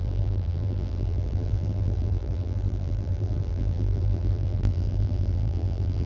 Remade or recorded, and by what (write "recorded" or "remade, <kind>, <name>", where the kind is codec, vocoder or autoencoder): remade, vocoder, BigVGAN v2